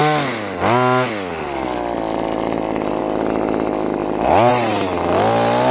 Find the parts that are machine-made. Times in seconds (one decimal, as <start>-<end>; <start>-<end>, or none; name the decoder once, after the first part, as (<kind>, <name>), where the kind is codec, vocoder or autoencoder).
none